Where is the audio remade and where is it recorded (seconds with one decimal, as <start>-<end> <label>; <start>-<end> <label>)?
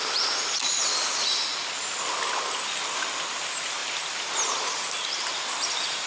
0.0-6.1 recorded